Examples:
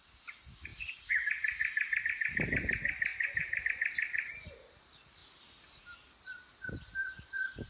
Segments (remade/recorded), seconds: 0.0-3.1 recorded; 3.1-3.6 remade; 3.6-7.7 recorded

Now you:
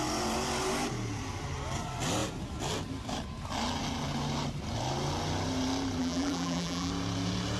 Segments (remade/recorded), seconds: 0.0-6.0 recorded; 6.0-6.9 remade; 6.9-7.6 recorded

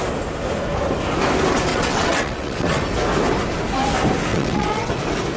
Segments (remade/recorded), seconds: 0.0-1.7 recorded; 1.7-2.8 remade; 2.8-4.3 recorded; 4.3-4.9 remade; 4.9-5.4 recorded

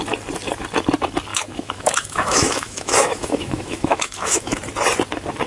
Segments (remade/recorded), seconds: 0.0-1.3 recorded; 1.3-4.6 remade; 4.6-5.5 recorded